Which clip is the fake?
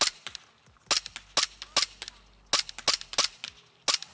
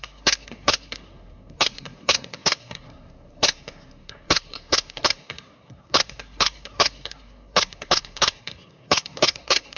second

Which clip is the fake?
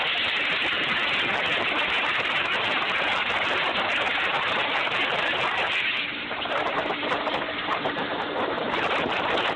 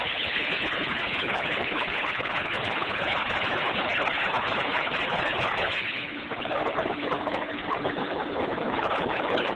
second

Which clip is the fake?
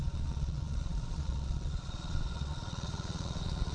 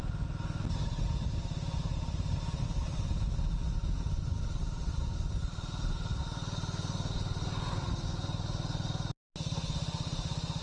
first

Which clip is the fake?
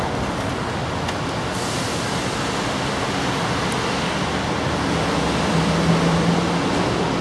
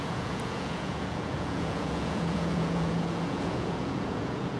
second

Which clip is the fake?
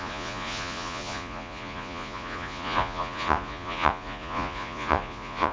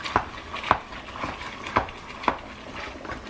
first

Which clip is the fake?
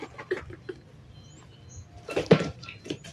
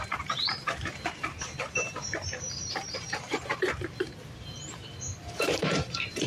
second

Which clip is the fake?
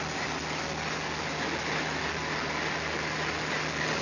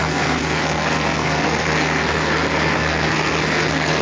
second